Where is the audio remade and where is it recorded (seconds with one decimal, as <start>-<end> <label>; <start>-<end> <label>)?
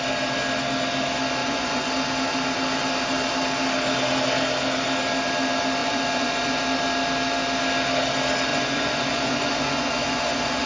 0.0-1.4 recorded; 1.4-1.9 remade; 1.9-5.8 recorded; 5.8-6.6 remade; 6.6-8.5 recorded; 8.5-10.7 remade